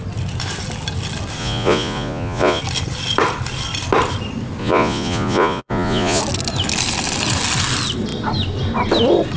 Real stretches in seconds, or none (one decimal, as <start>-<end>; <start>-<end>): 0.0-1.4; 2.6-4.6; 6.2-9.4